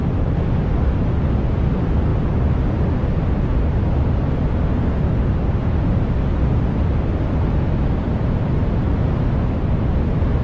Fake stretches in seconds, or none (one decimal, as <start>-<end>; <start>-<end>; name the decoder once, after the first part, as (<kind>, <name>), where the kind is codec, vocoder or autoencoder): 0.0-3.5 (vocoder, BigVGAN v2); 5.9-10.4